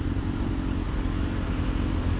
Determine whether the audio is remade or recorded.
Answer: recorded